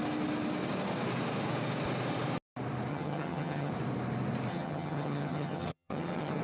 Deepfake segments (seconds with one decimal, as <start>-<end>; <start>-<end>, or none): 2.9-3.7; 4.5-6.4